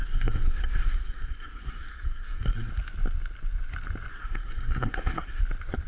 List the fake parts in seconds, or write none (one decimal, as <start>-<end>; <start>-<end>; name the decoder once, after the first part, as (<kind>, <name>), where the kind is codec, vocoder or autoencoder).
0.0-2.7 (codec, SNAC); 4.1-5.4